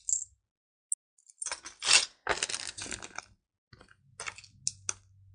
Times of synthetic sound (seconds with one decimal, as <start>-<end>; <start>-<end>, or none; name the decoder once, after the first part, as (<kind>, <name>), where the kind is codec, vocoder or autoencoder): none